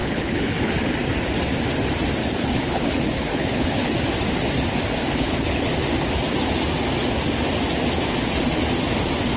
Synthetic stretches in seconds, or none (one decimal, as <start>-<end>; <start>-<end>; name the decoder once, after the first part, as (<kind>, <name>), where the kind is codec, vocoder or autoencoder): 0.0-0.9 (codec, HILCodec); 2.2-3.9; 5.0-5.7